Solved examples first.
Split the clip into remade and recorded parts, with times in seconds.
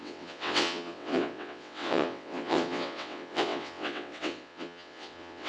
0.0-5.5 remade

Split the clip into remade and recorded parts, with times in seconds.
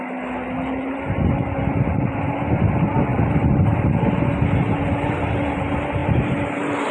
0.0-3.1 recorded; 3.1-4.1 remade; 4.1-6.0 recorded; 6.0-6.5 remade; 6.5-6.9 recorded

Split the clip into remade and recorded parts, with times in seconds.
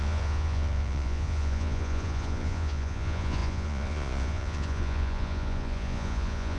0.0-6.6 remade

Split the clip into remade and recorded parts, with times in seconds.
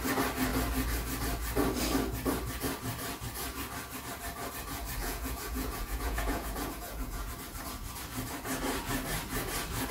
0.0-5.0 recorded; 5.0-7.3 remade; 7.3-9.9 recorded